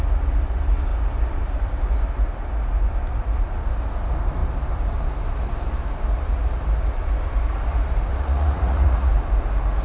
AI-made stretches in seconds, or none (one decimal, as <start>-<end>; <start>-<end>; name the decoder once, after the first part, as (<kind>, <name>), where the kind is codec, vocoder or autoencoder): 8.1-9.1 (vocoder, Vocos)